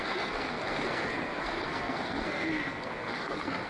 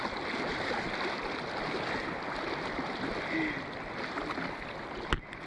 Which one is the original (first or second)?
second